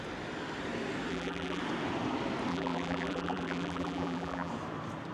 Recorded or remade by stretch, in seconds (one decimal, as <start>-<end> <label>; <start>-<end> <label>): 0.0-1.1 recorded; 1.1-1.6 remade; 1.6-2.5 recorded; 2.5-4.5 remade; 4.5-5.1 recorded